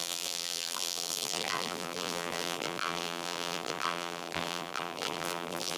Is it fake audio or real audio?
fake